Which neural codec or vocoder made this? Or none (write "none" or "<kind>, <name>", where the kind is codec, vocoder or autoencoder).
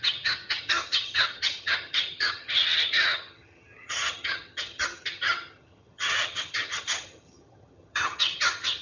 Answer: vocoder, HiFi-GAN